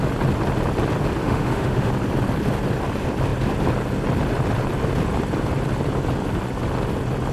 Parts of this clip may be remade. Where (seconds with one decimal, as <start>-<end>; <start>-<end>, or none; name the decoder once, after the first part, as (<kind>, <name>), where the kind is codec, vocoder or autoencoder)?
1.2-1.9 (autoencoder, DAC-VAE)